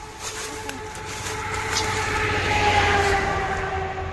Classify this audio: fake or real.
real